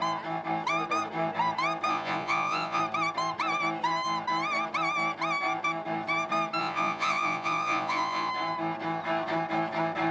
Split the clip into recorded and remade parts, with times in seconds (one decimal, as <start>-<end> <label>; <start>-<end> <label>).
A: 0.0-1.9 recorded; 1.9-2.8 remade; 2.8-6.6 recorded; 6.6-8.3 remade; 8.3-10.1 recorded

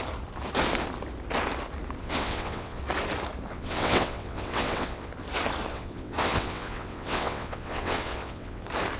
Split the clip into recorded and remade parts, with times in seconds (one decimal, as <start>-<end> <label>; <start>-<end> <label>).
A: 0.0-2.0 recorded; 2.0-2.8 remade; 2.8-3.5 recorded; 3.5-5.1 remade; 5.1-5.7 recorded; 5.7-8.6 remade; 8.6-9.0 recorded